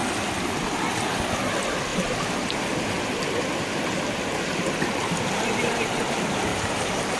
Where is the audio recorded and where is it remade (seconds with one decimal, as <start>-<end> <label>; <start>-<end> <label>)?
0.0-6.5 recorded; 6.5-7.2 remade